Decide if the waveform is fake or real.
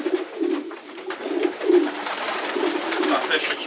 real